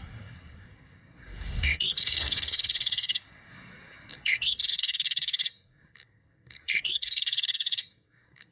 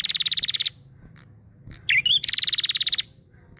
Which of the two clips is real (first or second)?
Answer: second